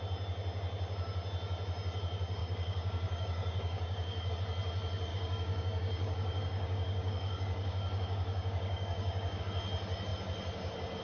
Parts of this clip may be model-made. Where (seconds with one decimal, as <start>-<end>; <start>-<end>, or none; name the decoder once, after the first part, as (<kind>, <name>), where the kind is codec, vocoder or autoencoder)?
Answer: 2.4-4.3 (codec, DAC); 5.1-9.4